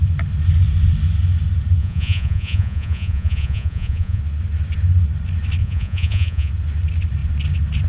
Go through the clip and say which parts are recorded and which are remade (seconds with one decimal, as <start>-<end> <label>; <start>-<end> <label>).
0.0-1.8 recorded; 1.8-4.2 remade; 4.2-5.6 recorded; 5.6-6.5 remade; 6.5-7.9 recorded

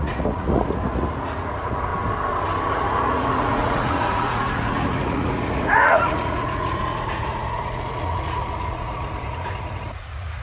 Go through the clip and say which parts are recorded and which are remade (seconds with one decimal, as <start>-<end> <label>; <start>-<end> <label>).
0.0-1.9 remade; 1.9-2.7 recorded; 2.7-10.4 remade

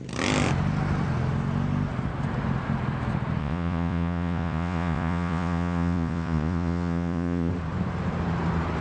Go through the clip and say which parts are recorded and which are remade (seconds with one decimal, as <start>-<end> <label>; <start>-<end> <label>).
0.0-3.4 recorded; 3.4-7.5 remade; 7.5-8.8 recorded

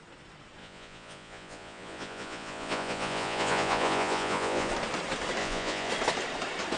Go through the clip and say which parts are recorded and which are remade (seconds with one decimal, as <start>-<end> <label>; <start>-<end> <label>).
0.0-0.6 recorded; 0.6-4.7 remade; 4.7-5.4 recorded; 5.4-5.9 remade; 5.9-6.8 recorded

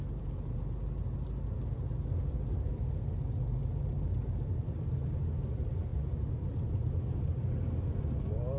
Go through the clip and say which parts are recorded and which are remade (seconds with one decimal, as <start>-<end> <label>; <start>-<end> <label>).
0.0-8.6 recorded

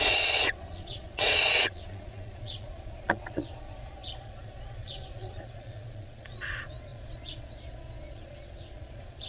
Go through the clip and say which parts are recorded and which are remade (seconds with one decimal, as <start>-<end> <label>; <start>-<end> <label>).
0.0-9.3 remade

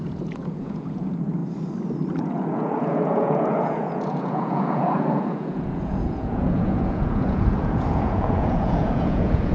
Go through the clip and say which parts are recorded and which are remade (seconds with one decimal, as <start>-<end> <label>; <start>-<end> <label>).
0.0-1.4 remade; 1.4-2.2 recorded; 2.2-9.5 remade